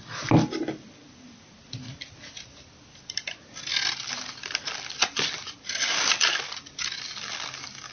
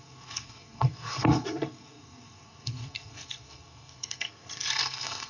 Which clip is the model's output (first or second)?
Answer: second